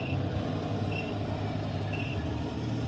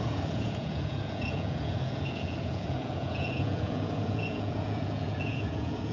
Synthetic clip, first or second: second